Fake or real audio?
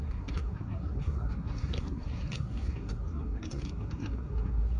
fake